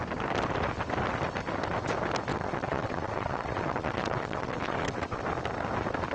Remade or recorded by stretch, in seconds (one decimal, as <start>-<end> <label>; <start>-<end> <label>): 0.0-2.3 recorded; 2.3-5.2 remade; 5.2-6.1 recorded